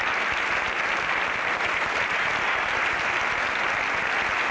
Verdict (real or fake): real